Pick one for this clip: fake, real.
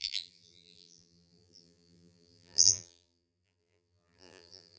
fake